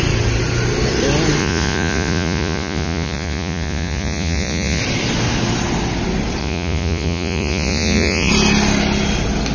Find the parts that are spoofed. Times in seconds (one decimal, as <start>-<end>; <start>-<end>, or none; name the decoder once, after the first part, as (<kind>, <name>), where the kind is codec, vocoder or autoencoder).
1.4-4.8 (vocoder, Vocos); 6.4-8.3